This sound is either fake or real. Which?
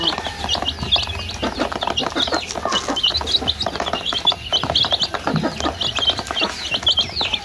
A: real